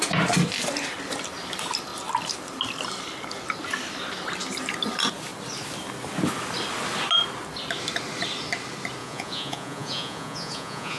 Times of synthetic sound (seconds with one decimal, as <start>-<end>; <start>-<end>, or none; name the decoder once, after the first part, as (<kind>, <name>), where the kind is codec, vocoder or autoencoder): 9.0-11.0 (vocoder, Vocos)